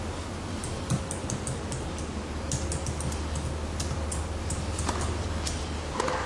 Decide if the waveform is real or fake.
real